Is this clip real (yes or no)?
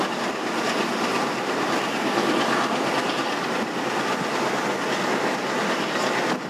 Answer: yes